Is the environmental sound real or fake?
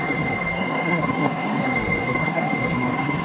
fake